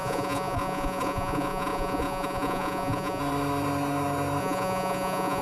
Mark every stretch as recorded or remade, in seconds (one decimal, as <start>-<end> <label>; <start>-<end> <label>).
0.0-3.2 remade; 3.2-4.4 recorded; 4.4-5.4 remade